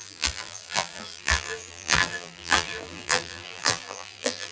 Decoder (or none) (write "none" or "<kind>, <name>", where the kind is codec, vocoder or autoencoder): vocoder, BigVGAN v2